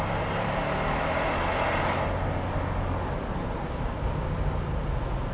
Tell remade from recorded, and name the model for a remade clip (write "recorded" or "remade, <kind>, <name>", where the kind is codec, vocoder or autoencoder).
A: recorded